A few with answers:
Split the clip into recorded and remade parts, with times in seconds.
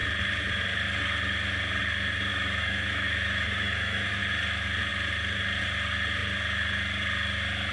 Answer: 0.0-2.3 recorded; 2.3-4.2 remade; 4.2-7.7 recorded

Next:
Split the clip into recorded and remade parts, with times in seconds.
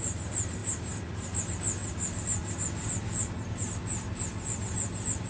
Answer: 0.0-5.3 recorded